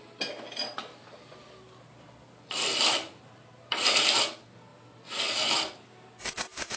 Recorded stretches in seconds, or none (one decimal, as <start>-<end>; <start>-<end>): 0.0-0.9; 4.2-4.7; 6.2-6.8